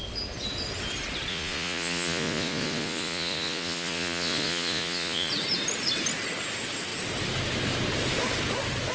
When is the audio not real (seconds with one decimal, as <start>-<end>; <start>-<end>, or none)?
1.3-5.3